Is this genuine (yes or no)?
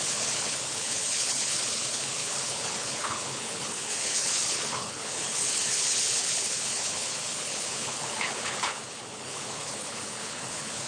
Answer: no